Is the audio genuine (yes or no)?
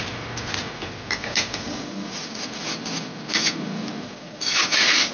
yes